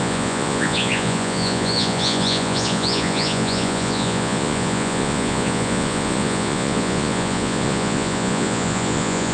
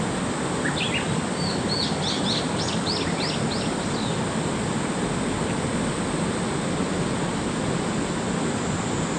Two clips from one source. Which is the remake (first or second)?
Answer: first